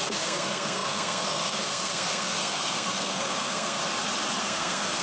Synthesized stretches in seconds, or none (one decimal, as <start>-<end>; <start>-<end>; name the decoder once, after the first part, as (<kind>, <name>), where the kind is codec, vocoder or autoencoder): 0.0-3.8 (codec, SNAC); 4.4-5.0